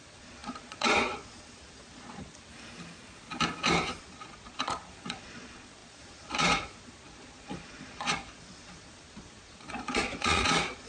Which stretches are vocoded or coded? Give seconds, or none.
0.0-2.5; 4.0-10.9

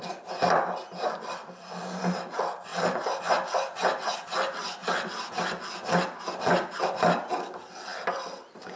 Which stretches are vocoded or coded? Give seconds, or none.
none